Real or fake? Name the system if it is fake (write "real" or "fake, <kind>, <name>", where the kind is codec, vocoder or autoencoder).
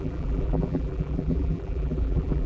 fake, vocoder, BigVGAN v2